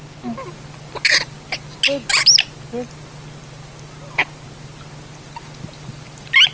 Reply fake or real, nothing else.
real